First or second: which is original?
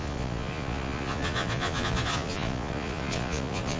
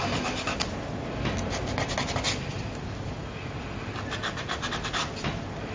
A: second